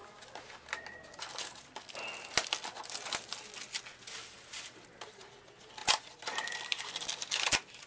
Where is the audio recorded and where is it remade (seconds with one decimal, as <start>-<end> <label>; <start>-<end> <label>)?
0.0-7.9 recorded